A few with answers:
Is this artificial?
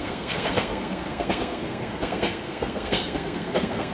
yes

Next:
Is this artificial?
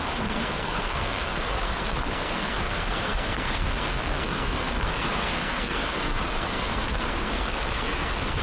yes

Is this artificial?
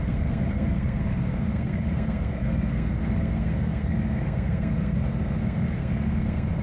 yes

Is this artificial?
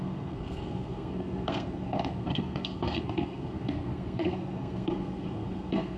yes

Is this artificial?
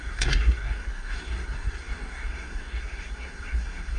yes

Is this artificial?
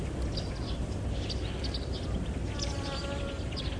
no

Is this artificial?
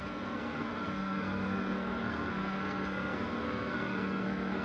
yes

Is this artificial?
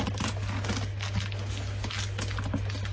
no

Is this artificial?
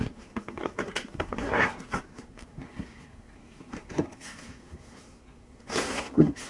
yes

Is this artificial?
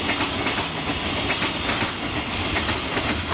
no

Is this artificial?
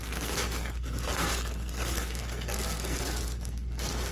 yes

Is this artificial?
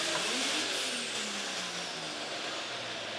no